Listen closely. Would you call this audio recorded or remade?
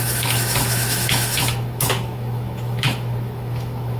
remade